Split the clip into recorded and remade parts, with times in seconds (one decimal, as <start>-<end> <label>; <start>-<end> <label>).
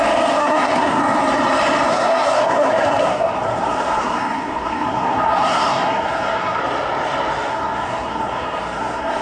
0.0-0.4 recorded; 0.4-1.0 remade; 1.0-1.9 recorded; 1.9-6.6 remade; 6.6-7.5 recorded; 7.5-9.2 remade